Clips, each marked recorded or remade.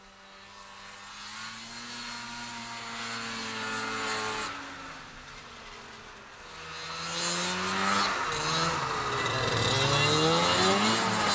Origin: recorded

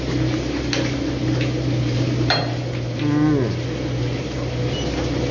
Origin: recorded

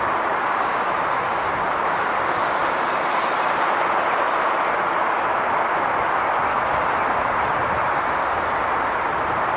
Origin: recorded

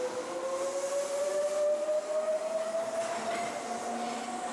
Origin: recorded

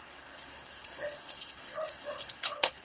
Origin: remade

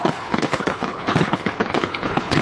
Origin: remade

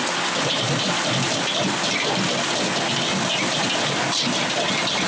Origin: recorded